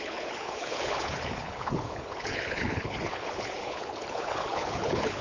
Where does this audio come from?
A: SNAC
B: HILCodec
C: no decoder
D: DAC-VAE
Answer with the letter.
B